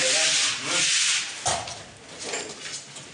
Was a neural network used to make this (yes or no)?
no